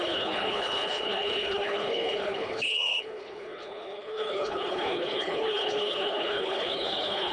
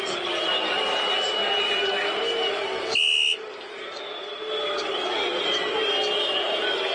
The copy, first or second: first